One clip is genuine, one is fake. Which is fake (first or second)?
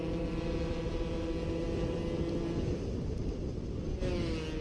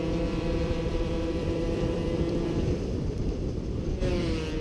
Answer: second